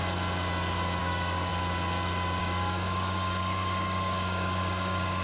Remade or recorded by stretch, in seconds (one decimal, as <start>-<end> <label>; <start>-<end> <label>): 0.0-1.0 recorded; 1.0-1.5 remade; 1.5-2.4 recorded; 2.4-5.2 remade